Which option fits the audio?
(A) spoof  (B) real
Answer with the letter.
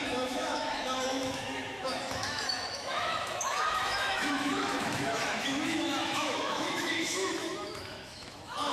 A